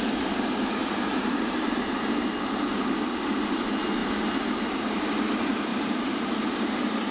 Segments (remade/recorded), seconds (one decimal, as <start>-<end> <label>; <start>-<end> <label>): 0.0-0.8 recorded; 0.8-1.8 remade; 1.8-5.7 recorded; 5.7-6.3 remade; 6.3-7.1 recorded